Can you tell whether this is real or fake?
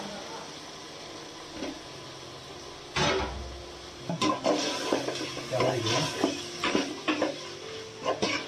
real